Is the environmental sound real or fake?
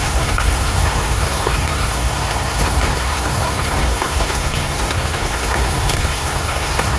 fake